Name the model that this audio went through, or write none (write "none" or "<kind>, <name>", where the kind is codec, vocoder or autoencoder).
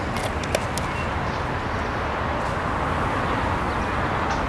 none